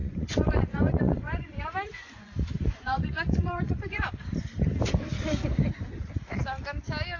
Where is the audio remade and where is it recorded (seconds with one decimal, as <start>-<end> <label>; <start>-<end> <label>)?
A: 0.0-4.3 remade; 4.3-7.2 recorded